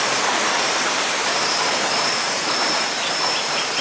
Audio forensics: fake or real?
fake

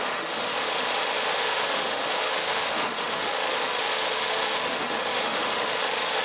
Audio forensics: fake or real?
fake